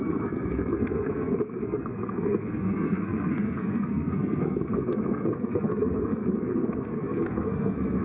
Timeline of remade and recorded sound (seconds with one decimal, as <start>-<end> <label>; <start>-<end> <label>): 0.0-8.0 remade